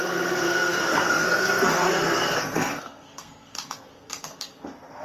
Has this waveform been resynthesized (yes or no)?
yes